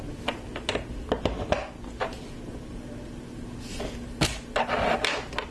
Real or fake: real